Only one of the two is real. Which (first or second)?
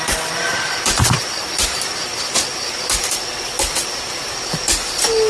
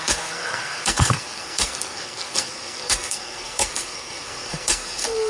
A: first